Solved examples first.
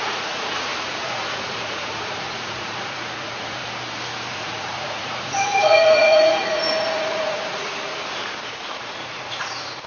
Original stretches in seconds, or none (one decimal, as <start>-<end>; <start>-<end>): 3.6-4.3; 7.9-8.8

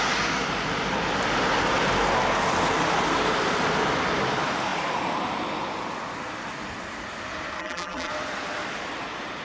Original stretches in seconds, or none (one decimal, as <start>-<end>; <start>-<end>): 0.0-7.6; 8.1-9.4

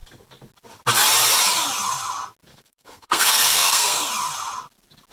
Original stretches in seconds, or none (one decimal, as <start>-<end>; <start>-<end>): 0.0-2.5; 4.1-5.1